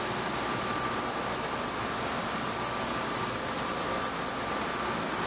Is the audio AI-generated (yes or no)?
no